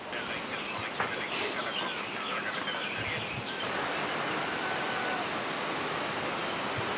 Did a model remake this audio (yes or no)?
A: no